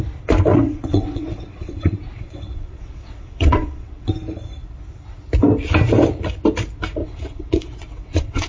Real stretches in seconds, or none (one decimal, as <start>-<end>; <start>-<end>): 0.0-0.5; 4.1-7.0